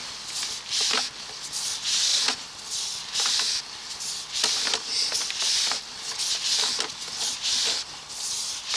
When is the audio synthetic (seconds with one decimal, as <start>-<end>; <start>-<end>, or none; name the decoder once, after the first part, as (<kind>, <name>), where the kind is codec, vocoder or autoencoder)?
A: none